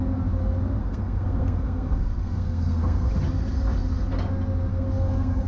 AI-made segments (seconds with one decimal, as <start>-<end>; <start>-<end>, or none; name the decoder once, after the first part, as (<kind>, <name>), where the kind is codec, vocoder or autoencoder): 0.8-3.1 (codec, SNAC); 4.7-5.5